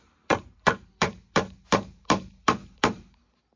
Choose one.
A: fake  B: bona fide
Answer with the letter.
A